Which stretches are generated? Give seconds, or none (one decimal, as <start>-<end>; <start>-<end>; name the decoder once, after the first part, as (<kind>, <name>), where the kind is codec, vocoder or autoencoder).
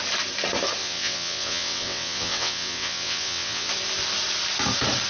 0.8-3.7 (vocoder, WaveNeXt)